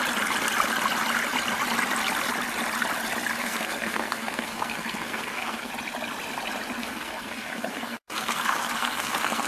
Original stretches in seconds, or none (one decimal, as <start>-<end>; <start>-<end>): 0.0-3.4; 5.7-6.8

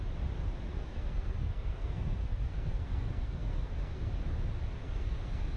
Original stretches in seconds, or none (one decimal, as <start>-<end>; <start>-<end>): 0.0-0.7; 4.1-4.8